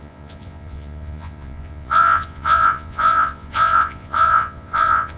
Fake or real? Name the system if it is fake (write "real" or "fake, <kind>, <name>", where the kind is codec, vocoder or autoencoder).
fake, vocoder, Vocos